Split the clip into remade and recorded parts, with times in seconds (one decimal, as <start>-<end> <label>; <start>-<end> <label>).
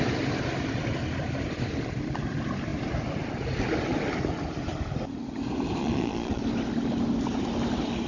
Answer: 0.0-5.8 recorded; 5.8-6.4 remade; 6.4-8.1 recorded